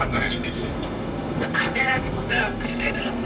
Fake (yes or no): yes